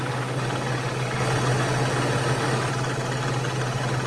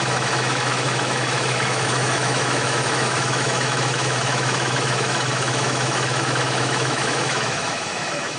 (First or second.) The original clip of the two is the first